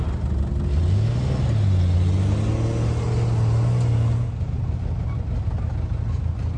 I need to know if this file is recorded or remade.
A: recorded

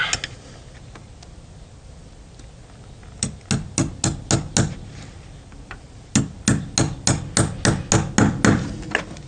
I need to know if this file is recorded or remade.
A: recorded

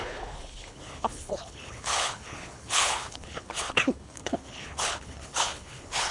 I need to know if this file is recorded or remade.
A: remade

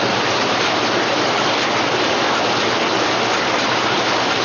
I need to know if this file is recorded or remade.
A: recorded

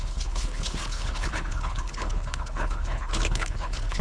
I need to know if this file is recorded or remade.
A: remade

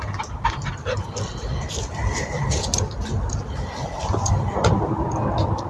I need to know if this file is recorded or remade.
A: recorded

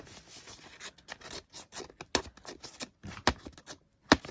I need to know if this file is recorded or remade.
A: recorded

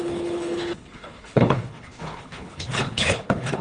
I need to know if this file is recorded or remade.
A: remade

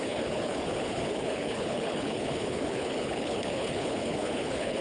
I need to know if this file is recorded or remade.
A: remade